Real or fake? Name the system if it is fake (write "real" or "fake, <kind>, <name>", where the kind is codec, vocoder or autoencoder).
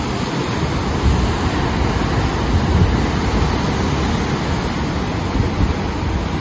real